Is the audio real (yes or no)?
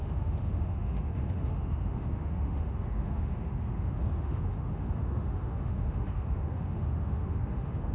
no